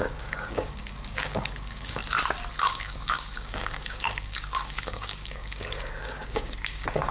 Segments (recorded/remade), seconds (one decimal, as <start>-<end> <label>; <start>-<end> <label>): 0.0-2.0 remade; 2.0-2.6 recorded; 2.6-7.1 remade